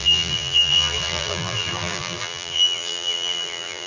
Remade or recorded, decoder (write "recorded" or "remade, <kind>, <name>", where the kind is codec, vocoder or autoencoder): remade, vocoder, BigVGAN v2